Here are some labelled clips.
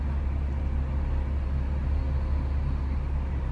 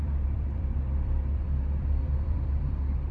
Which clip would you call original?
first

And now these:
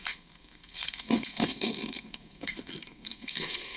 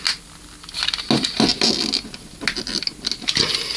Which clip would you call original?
second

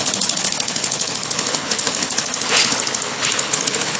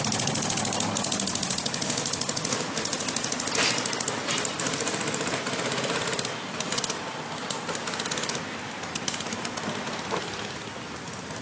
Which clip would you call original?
second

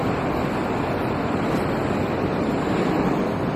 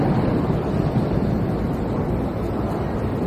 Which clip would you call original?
first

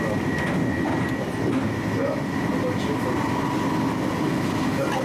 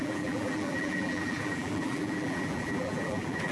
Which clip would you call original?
first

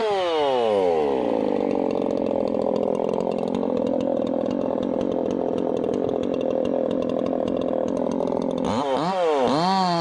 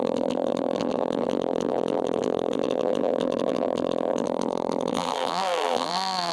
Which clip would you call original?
first